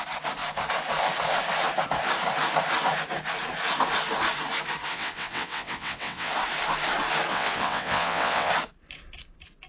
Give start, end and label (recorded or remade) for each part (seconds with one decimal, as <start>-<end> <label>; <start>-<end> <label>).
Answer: 0.0-4.9 recorded; 4.9-6.3 remade; 6.3-7.3 recorded; 7.3-8.5 remade; 8.5-9.7 recorded